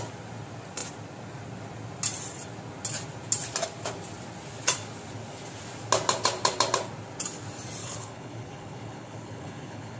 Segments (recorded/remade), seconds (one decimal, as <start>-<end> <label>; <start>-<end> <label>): 0.0-7.8 recorded; 7.8-10.0 remade